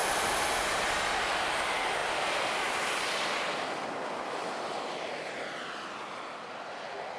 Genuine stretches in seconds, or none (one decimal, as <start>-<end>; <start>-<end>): 0.0-7.2